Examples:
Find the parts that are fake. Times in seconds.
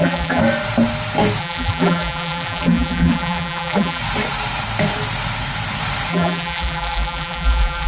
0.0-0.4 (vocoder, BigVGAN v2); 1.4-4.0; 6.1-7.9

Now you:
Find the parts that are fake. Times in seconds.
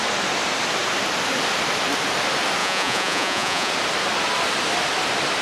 2.6-3.7 (vocoder, Vocos)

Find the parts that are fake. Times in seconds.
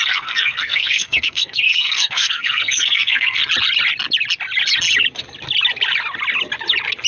0.0-3.4 (codec, SNAC)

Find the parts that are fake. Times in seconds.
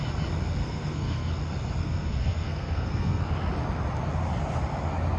0.6-1.3 (codec, SNAC); 1.8-3.2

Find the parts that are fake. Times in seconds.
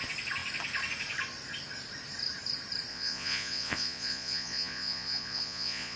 2.9-6.0 (vocoder, Vocos)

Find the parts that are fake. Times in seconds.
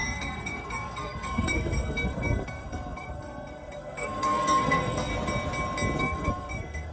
0.0-5.1 (codec, SNAC); 6.0-6.9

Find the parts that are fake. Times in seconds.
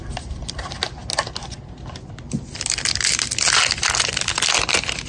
none